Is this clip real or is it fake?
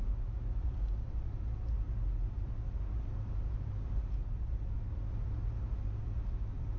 fake